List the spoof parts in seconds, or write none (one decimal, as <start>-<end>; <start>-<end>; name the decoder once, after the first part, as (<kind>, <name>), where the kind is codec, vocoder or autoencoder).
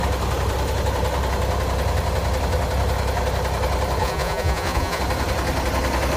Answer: 4.0-5.0 (vocoder, Vocos)